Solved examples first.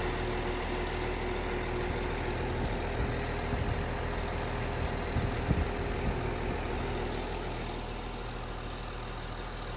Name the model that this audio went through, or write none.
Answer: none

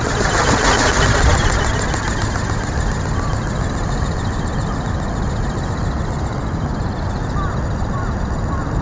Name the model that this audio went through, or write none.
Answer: none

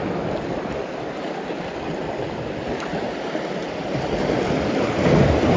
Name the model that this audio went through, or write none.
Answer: none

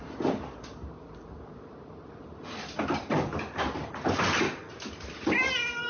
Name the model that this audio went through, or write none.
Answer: none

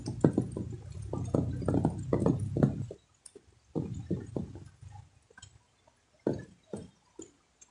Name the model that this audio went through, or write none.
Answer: none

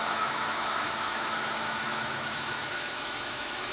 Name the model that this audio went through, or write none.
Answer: autoencoder, DAC-VAE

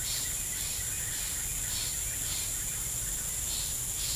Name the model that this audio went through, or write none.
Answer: none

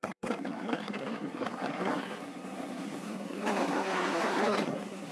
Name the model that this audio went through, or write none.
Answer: codec, SNAC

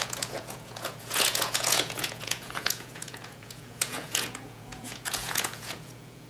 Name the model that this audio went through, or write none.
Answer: vocoder, Vocos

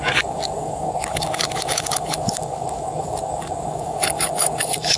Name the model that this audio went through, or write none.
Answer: codec, DAC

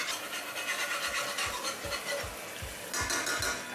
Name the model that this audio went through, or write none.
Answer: none